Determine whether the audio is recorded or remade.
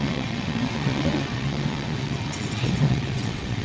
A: remade